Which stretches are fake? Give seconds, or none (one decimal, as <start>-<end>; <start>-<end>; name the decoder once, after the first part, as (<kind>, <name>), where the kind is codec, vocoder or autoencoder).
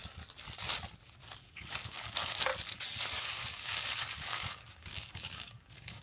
1.4-2.5 (codec, DAC); 3.2-6.0